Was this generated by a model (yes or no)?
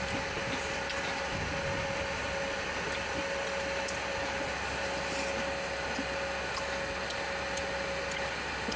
no